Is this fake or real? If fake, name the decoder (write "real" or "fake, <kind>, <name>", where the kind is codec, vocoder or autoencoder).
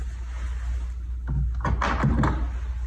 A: real